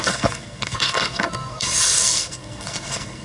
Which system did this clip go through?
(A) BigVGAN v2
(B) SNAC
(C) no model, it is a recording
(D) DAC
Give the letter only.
B